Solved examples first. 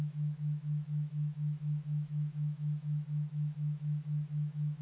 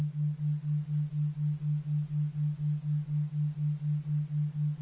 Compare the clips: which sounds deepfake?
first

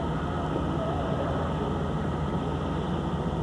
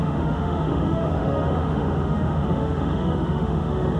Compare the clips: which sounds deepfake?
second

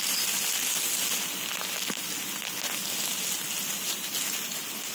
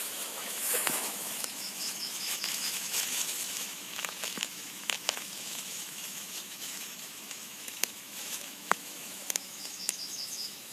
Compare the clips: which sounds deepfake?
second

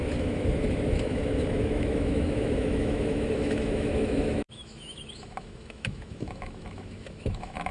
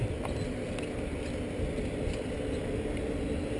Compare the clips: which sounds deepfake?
first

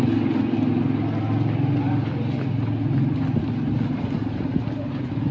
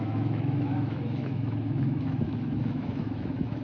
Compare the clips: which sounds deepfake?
second